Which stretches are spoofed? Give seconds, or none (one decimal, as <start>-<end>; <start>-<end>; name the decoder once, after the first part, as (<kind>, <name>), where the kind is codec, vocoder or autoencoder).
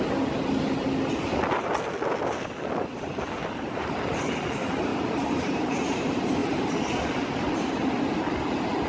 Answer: 3.4-4.0 (vocoder, BigVGAN v2); 4.9-6.0